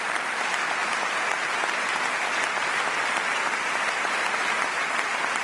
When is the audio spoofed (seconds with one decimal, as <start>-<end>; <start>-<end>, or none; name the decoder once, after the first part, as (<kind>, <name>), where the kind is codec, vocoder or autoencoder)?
0.0-0.8 (vocoder, BigVGAN v2); 3.7-5.4